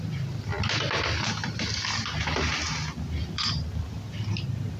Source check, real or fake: real